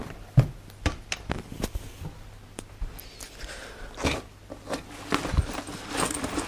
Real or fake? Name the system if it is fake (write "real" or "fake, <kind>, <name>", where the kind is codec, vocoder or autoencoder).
real